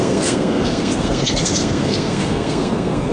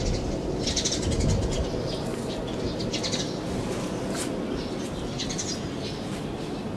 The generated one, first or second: first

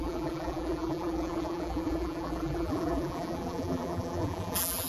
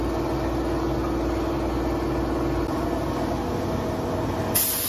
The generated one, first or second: first